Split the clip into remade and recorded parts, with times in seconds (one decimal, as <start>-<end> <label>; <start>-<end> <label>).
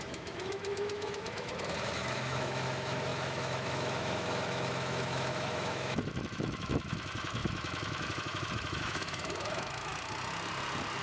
0.0-9.9 remade; 9.9-11.0 recorded